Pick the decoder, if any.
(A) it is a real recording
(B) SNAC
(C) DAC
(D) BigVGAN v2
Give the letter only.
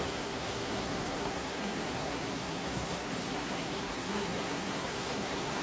B